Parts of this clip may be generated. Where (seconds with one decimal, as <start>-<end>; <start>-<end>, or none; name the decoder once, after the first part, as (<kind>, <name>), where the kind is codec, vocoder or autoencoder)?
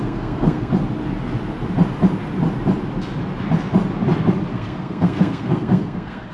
0.0-0.7 (codec, SNAC); 4.5-6.3